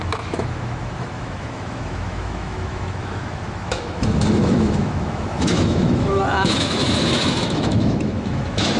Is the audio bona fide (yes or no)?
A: no